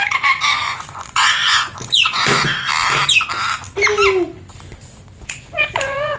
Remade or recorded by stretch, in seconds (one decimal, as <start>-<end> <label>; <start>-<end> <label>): 0.0-2.7 remade; 2.7-4.9 recorded; 4.9-6.2 remade